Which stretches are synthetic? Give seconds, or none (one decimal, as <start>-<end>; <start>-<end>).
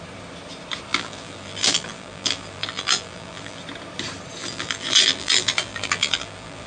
0.9-3.6; 4.4-6.7